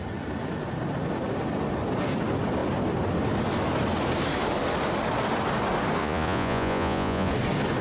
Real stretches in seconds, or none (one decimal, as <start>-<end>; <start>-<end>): 0.0-6.0; 7.3-7.8